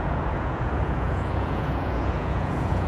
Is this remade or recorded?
remade